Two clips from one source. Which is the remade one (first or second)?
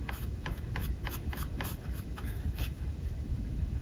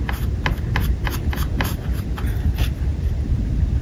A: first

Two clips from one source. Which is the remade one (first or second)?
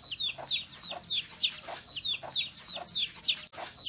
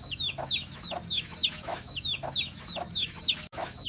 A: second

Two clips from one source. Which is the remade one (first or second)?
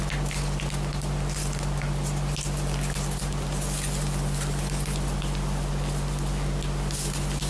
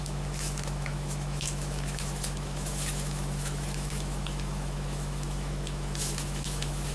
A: second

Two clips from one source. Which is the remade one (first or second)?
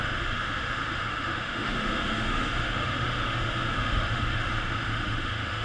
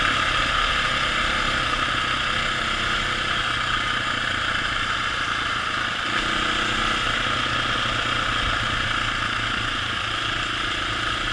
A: first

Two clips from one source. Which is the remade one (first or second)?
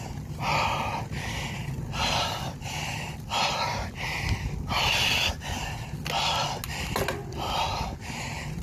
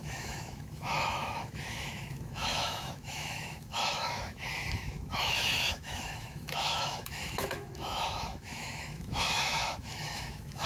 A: second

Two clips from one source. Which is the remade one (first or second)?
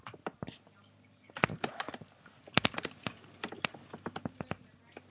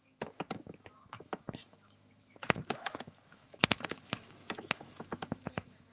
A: second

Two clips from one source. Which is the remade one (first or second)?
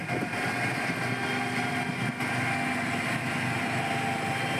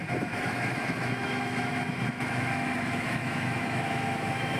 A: second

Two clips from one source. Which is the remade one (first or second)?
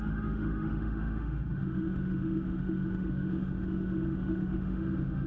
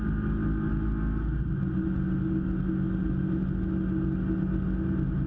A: first